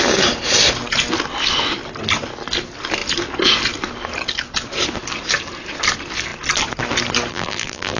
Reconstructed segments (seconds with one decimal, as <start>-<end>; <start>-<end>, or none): 7.3-8.0